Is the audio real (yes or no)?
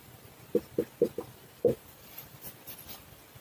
yes